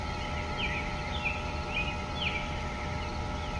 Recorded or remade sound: recorded